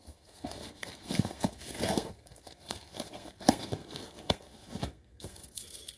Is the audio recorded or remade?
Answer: remade